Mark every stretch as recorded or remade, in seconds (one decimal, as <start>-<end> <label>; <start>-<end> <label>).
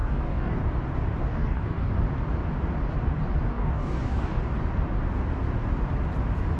0.0-0.6 remade; 0.6-1.2 recorded; 1.2-1.9 remade; 1.9-3.5 recorded; 3.5-4.4 remade; 4.4-6.6 recorded